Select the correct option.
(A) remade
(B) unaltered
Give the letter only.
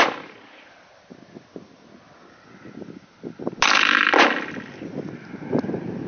B